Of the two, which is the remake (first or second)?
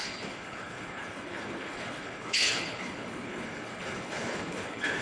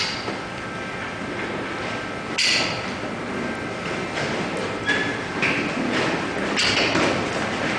first